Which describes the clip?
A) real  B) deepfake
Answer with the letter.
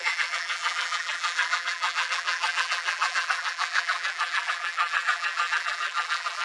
B